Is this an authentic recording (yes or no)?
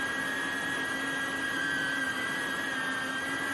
yes